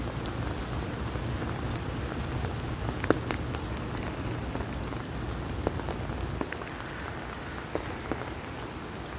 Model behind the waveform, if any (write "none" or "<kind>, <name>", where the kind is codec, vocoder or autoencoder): none